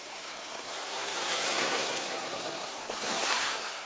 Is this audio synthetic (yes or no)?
yes